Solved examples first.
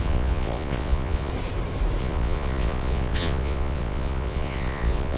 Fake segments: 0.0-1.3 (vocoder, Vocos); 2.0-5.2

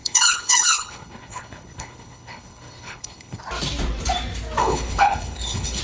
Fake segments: 0.0-3.4 (codec, HILCodec); 4.6-5.8

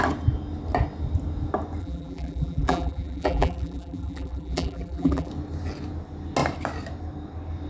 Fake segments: 1.8-5.3 (vocoder, BigVGAN v2)

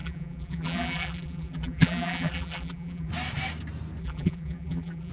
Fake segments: 0.0-3.1 (vocoder, BigVGAN v2); 4.0-5.1